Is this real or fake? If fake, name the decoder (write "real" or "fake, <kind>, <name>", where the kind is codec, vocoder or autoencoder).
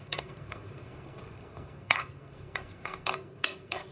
fake, codec, SNAC